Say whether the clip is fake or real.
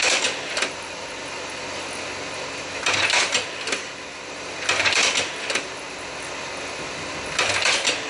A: real